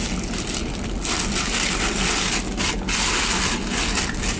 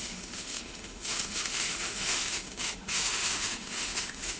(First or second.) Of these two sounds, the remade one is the second